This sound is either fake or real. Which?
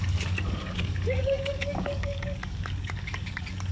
fake